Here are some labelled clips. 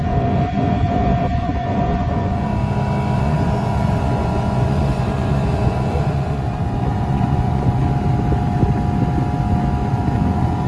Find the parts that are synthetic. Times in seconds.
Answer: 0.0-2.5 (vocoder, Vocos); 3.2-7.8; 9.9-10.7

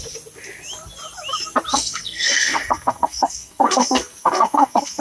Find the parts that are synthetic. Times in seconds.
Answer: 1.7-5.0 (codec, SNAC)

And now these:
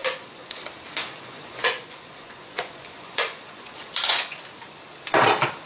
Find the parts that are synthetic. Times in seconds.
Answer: 0.0-0.6 (vocoder, Vocos); 1.0-4.4

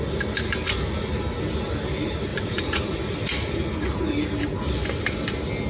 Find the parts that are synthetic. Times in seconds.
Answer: 2.3-2.8 (vocoder, Vocos)

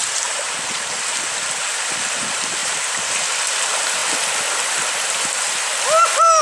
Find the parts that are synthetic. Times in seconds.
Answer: 0.0-0.5 (vocoder, BigVGAN v2); 2.6-3.1

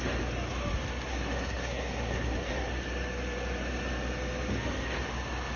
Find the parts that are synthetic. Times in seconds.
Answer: 1.1-2.5 (codec, SNAC)